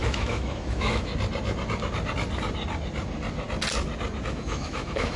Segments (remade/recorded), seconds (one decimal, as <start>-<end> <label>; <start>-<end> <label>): 0.0-1.1 remade; 1.1-4.2 recorded; 4.2-5.2 remade